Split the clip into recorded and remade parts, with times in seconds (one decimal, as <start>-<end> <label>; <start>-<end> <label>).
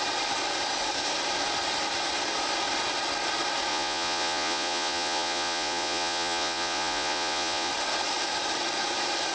0.0-3.7 recorded; 3.7-7.7 remade; 7.7-9.3 recorded